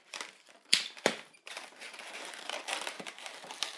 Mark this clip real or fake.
fake